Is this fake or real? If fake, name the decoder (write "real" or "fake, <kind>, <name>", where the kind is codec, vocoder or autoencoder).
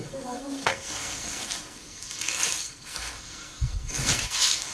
fake, codec, SNAC